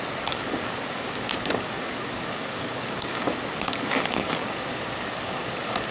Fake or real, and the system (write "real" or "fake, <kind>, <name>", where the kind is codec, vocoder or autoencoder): fake, codec, DAC